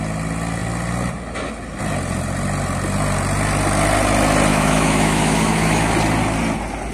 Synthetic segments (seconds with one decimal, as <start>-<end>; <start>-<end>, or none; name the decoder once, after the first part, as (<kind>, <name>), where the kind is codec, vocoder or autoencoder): 4.5-5.9 (autoencoder, DAC-VAE)